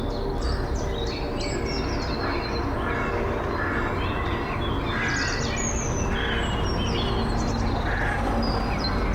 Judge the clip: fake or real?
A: real